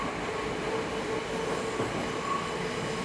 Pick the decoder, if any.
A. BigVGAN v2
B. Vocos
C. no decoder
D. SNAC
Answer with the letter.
C